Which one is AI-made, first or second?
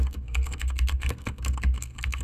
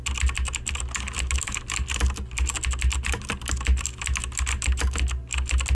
first